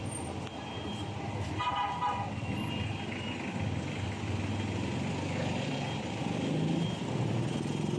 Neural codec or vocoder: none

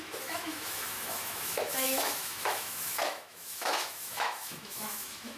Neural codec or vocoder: autoencoder, DAC-VAE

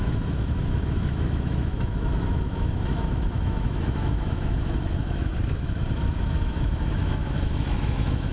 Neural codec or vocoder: autoencoder, DAC-VAE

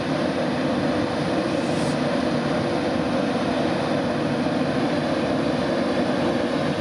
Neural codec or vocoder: none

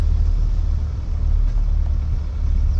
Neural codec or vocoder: none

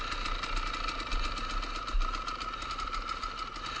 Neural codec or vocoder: none